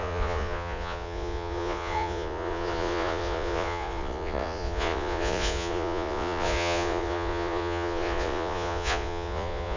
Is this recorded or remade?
remade